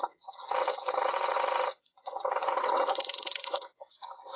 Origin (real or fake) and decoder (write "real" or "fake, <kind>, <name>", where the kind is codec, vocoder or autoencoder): fake, vocoder, WaveNeXt